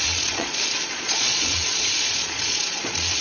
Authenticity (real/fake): fake